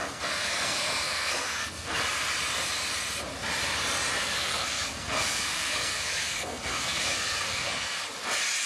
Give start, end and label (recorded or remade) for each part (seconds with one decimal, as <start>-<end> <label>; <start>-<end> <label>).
0.0-2.0 remade; 2.0-4.2 recorded; 4.2-8.0 remade; 8.0-8.7 recorded